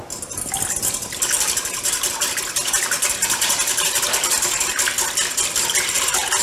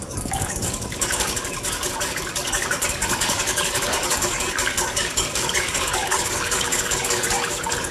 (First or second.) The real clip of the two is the first